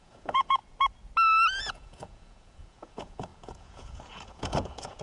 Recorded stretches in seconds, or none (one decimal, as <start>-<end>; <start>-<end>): 0.6-1.6

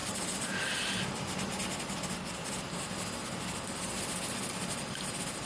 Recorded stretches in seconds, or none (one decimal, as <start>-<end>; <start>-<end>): 0.0-5.4

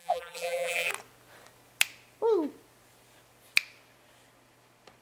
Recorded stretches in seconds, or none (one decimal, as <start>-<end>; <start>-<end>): 0.9-5.0